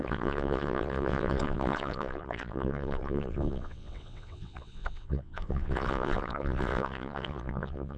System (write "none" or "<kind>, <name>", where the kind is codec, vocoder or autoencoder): vocoder, WaveNeXt